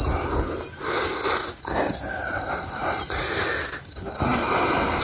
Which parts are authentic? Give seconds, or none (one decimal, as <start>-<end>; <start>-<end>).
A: 0.0-2.8; 3.3-4.3